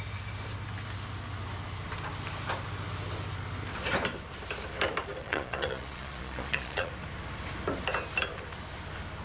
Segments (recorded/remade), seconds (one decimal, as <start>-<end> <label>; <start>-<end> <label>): 0.0-5.2 recorded; 5.2-6.9 remade; 6.9-9.2 recorded